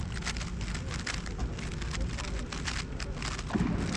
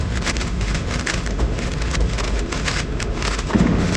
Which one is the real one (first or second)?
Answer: first